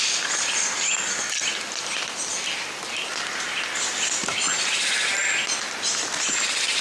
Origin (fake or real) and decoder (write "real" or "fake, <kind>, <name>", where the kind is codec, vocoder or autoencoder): real